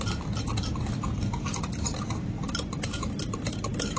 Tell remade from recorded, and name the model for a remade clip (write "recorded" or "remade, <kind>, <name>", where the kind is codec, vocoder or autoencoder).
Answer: recorded